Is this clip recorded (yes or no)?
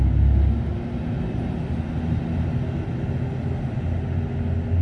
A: yes